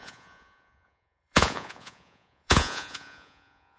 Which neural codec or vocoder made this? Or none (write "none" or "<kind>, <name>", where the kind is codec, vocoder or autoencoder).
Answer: vocoder, Vocos